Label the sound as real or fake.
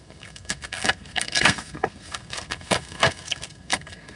fake